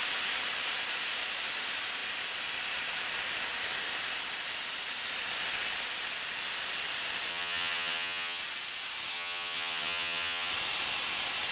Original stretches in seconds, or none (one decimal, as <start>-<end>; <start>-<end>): 0.0-7.3; 8.4-9.1; 10.5-11.5